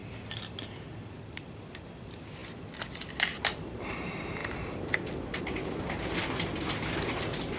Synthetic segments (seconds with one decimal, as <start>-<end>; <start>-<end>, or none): none